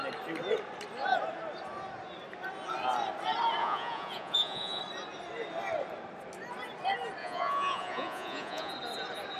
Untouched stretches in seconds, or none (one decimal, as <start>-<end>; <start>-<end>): 0.0-3.6; 4.8-7.2; 8.7-9.4

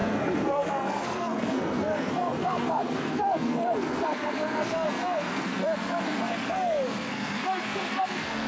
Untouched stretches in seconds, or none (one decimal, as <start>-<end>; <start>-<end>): none

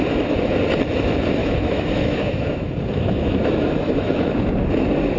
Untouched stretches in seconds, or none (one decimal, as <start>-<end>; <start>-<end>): 0.0-1.4; 4.5-5.2

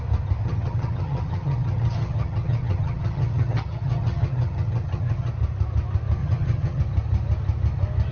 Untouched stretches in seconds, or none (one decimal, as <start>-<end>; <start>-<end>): 0.0-0.4; 5.3-6.2; 6.8-8.1

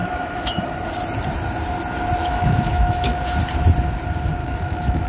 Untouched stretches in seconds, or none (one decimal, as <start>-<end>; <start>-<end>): 0.6-2.2; 3.2-4.4

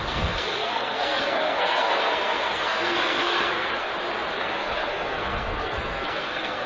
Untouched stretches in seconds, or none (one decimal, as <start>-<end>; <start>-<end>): 3.9-4.4

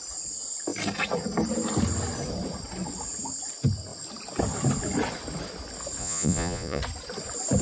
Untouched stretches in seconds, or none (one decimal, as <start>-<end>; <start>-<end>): 0.0-6.0; 6.8-7.6